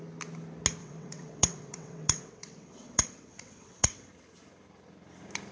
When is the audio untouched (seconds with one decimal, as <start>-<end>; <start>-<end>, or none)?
0.0-0.8; 4.1-5.5